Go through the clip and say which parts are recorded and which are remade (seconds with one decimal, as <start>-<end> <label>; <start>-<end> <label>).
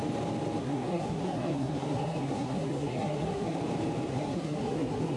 0.0-0.6 recorded; 0.6-3.6 remade; 3.6-4.1 recorded; 4.1-5.2 remade